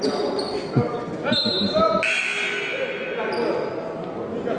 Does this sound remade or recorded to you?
recorded